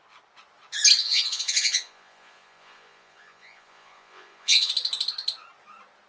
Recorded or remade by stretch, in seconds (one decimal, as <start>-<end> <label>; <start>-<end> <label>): 0.0-1.0 recorded; 1.0-4.7 remade; 4.7-6.1 recorded